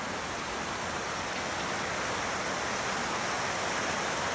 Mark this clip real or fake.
real